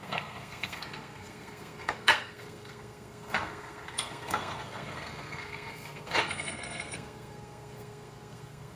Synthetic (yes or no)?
yes